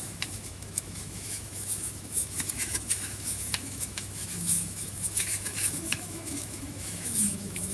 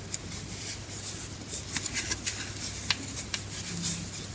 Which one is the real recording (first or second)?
second